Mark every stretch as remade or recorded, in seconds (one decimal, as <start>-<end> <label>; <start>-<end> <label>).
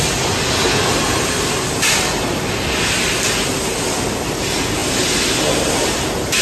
0.0-6.4 recorded